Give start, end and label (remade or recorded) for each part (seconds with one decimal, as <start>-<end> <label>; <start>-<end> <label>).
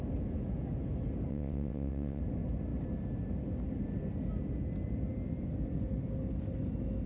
0.0-1.3 recorded; 1.3-2.2 remade; 2.2-7.1 recorded